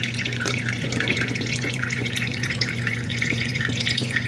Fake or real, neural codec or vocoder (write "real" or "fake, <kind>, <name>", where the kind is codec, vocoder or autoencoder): fake, vocoder, Vocos